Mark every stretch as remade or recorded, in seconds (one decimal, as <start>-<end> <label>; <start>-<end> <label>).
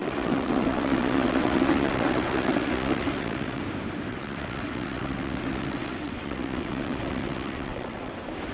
0.0-3.6 remade; 3.6-4.1 recorded; 4.1-8.1 remade; 8.1-8.5 recorded